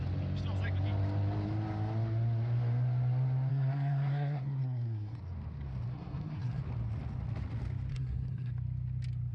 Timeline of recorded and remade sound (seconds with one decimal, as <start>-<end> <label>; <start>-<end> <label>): 0.0-3.5 recorded; 3.5-5.2 remade; 5.2-5.9 recorded; 5.9-6.6 remade; 6.6-7.9 recorded; 7.9-8.5 remade; 8.5-9.3 recorded